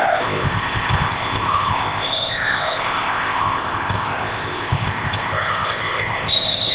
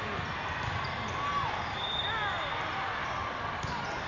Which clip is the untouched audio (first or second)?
second